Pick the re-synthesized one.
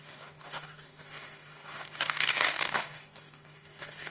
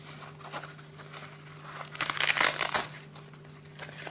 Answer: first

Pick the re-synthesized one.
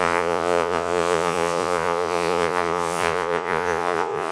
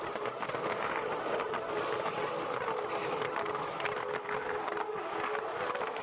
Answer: first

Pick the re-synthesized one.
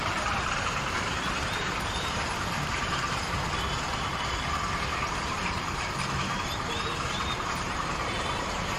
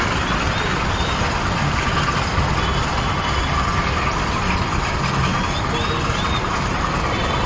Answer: first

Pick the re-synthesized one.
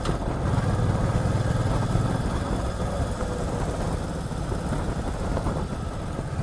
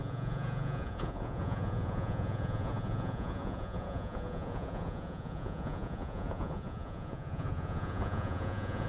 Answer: second